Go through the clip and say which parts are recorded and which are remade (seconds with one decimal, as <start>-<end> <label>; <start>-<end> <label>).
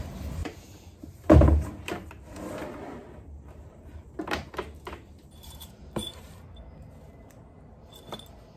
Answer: 0.0-0.4 recorded; 0.4-2.1 remade; 2.1-3.0 recorded; 3.0-6.9 remade; 6.9-8.6 recorded